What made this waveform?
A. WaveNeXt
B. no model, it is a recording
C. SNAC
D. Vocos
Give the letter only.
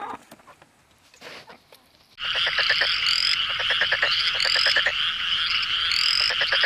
B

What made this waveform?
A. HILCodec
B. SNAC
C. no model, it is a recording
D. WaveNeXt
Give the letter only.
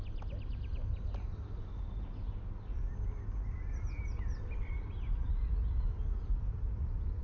C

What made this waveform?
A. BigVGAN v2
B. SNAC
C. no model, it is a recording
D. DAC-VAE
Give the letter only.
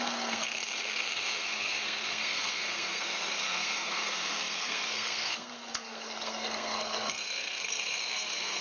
B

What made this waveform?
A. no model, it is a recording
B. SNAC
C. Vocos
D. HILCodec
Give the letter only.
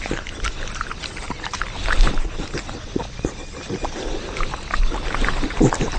A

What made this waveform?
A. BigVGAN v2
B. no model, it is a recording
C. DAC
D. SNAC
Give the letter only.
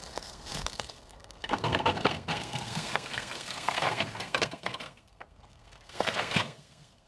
D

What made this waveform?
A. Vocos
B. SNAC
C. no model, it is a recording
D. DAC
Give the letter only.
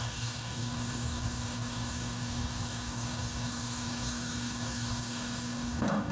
D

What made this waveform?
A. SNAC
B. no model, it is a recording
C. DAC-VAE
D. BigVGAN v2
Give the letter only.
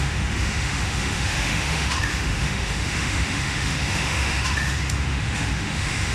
C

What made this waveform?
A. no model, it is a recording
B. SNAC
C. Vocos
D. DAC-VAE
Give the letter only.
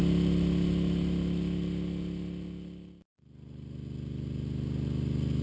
A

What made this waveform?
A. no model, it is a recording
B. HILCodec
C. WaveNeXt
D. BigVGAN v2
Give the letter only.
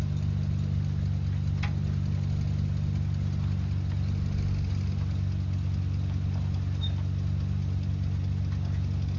A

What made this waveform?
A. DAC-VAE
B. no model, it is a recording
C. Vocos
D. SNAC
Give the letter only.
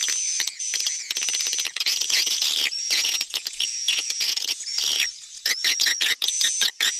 C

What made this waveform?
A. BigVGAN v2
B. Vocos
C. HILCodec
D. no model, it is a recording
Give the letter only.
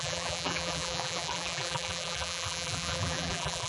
A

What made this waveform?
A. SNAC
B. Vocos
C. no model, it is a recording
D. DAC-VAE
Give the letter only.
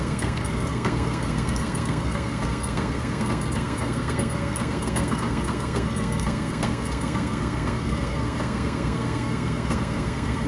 A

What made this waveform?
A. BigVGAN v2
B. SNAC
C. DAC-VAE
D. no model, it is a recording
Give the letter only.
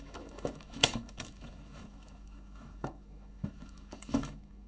C